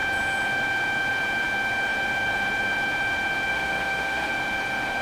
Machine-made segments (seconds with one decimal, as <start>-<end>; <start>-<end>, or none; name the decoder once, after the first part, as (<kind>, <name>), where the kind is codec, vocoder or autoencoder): 3.5-4.3 (autoencoder, DAC-VAE)